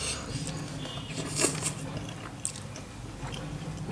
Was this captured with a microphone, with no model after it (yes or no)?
yes